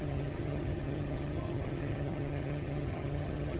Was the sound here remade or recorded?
remade